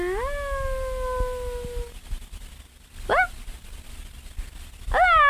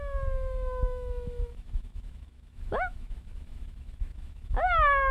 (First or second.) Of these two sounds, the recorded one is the first